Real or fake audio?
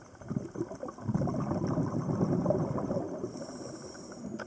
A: fake